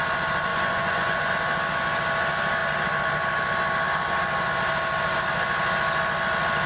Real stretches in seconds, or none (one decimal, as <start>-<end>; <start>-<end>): 0.0-0.5; 1.3-6.7